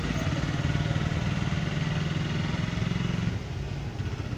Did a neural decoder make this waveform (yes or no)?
no